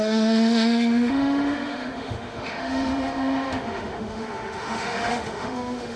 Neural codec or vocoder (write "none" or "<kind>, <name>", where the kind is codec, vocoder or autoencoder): autoencoder, DAC-VAE